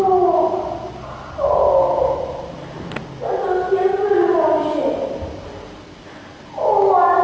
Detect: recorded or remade recorded